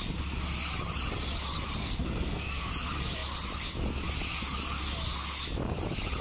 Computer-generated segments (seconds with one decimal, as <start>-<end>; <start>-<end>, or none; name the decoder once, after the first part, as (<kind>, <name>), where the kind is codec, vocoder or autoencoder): 1.8-2.7 (codec, SNAC)